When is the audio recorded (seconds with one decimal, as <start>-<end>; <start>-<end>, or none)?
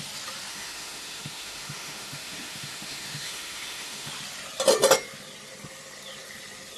0.0-0.5; 4.1-6.8